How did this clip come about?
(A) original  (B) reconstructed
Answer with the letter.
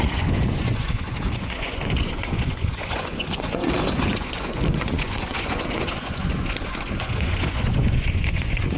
B